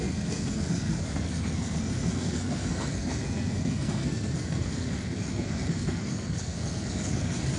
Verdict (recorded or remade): remade